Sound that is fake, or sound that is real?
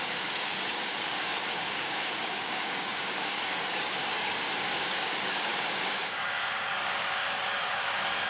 fake